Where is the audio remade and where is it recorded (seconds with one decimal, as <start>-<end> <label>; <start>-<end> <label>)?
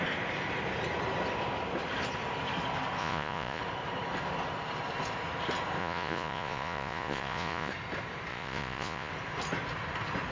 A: 0.0-3.0 recorded; 3.0-3.6 remade; 3.6-5.8 recorded; 5.8-7.7 remade; 7.7-8.3 recorded; 8.3-9.1 remade; 9.1-10.3 recorded